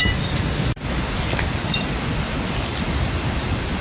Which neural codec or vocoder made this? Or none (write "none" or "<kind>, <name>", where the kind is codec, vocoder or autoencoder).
none